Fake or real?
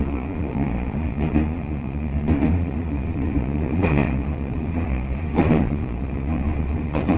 fake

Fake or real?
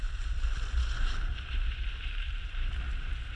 fake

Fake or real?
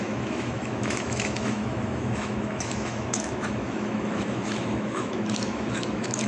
fake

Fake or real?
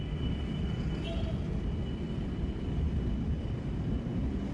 real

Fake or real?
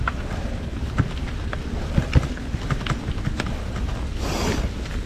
real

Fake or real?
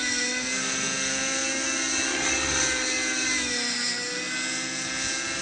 real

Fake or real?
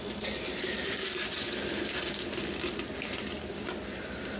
real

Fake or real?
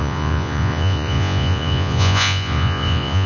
fake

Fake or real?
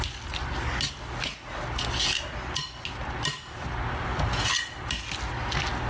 real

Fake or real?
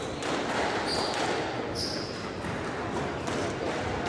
real